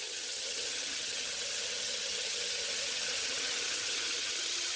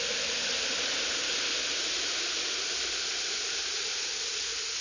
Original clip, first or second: second